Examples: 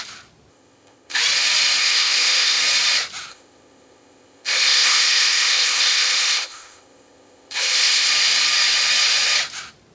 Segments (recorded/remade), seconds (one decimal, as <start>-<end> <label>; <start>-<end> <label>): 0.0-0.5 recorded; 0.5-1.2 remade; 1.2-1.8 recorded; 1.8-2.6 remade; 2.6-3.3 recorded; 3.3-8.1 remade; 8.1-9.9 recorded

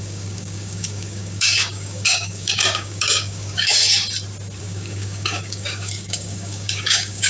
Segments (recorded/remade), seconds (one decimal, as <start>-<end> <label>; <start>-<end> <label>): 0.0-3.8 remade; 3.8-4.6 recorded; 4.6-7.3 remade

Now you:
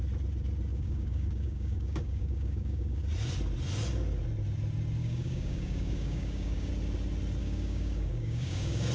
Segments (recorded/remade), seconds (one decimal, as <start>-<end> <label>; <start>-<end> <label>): 0.0-0.7 recorded; 0.7-3.0 remade; 3.0-5.0 recorded; 5.0-6.7 remade; 6.7-7.4 recorded; 7.4-8.9 remade

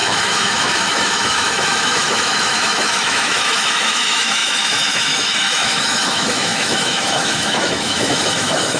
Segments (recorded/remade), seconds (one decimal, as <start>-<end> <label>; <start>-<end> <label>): 0.0-8.8 remade

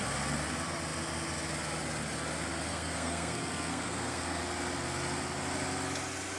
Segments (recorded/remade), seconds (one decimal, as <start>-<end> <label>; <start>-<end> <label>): 0.0-2.7 recorded; 2.7-4.4 remade; 4.4-6.4 recorded

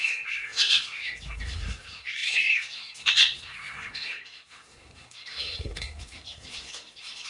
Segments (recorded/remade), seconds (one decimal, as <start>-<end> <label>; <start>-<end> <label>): 0.0-7.3 remade

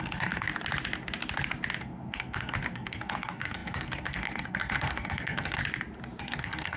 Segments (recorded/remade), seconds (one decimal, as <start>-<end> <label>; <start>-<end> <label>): 0.0-0.5 remade; 0.5-1.8 recorded; 1.8-5.6 remade; 5.6-6.2 recorded; 6.2-6.8 remade